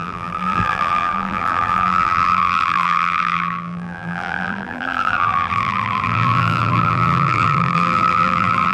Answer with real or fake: fake